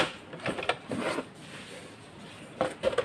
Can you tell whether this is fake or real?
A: real